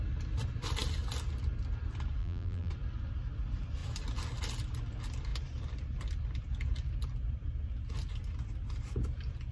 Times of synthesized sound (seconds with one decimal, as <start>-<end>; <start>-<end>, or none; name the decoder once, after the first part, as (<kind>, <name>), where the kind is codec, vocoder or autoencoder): 2.2-2.7 (vocoder, BigVGAN v2)